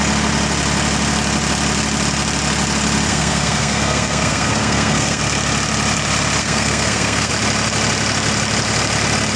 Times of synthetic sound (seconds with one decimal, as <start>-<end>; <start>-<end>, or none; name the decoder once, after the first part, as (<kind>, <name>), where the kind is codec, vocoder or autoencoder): 3.1-5.2 (codec, SNAC); 6.4-7.3